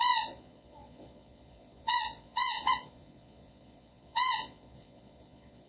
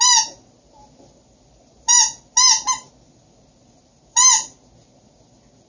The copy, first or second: first